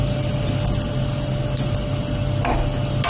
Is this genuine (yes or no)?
yes